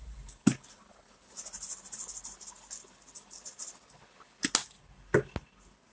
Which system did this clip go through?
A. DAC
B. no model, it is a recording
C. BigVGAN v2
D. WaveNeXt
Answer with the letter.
B